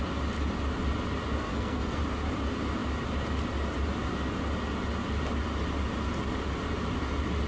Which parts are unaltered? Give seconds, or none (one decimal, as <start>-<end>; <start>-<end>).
0.0-1.3; 2.0-7.5